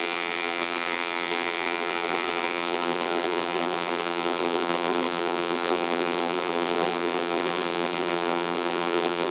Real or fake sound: fake